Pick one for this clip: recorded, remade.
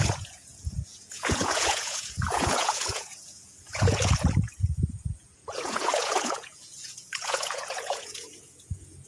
remade